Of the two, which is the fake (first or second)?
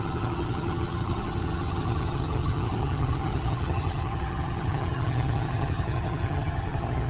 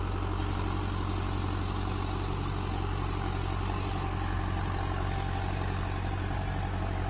first